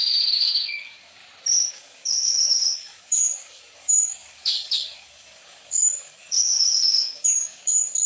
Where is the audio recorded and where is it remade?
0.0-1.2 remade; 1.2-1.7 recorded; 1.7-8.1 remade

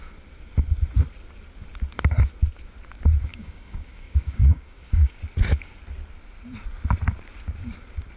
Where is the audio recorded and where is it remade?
0.0-3.3 recorded; 3.3-5.2 remade; 5.2-8.2 recorded

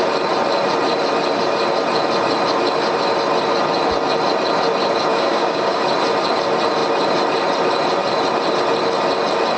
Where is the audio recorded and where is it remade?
0.0-5.1 recorded; 5.1-5.8 remade; 5.8-9.6 recorded

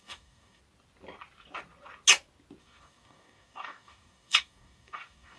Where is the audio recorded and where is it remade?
0.0-0.6 remade; 0.6-2.6 recorded; 2.6-5.4 remade

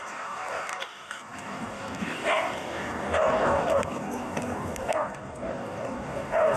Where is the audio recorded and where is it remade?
0.0-6.6 remade